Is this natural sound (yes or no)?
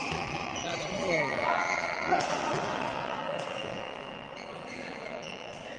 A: no